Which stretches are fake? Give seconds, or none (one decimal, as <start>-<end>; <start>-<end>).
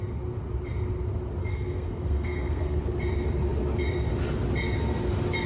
1.4-2.8